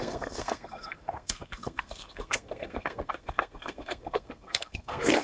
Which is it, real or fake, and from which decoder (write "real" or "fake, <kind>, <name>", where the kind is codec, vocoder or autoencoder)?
fake, codec, SNAC